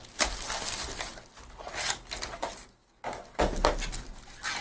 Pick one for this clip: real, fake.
real